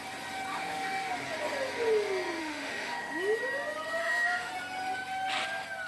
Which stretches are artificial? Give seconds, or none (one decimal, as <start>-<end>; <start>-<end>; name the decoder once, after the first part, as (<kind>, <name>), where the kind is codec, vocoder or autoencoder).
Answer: 0.5-1.1 (autoencoder, DAC-VAE); 2.4-3.2; 4.0-4.5